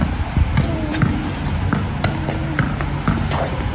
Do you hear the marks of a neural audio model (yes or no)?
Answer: no